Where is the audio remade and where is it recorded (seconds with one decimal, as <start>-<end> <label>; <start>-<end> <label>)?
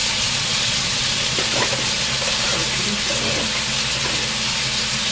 0.0-1.6 remade; 1.6-5.1 recorded